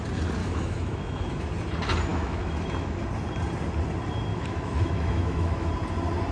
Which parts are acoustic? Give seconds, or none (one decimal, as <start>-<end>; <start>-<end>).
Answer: 0.0-0.4; 1.5-2.1; 3.0-4.3; 5.7-6.3